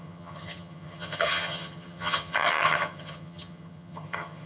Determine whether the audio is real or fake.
fake